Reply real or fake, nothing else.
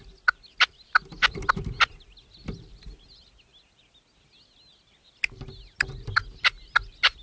real